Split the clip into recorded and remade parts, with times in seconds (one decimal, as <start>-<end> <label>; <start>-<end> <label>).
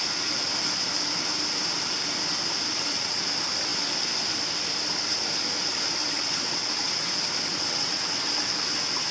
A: 0.0-2.7 recorded; 2.7-3.2 remade; 3.2-6.0 recorded; 6.0-7.1 remade; 7.1-7.5 recorded; 7.5-8.3 remade; 8.3-9.1 recorded